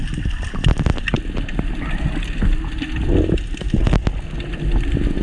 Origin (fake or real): real